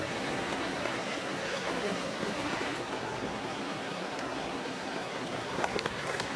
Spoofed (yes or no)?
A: yes